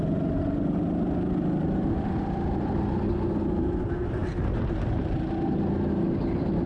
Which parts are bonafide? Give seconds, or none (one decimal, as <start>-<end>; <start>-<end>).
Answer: 0.0-6.7